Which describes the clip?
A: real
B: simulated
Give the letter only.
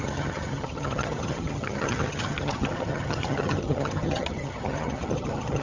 B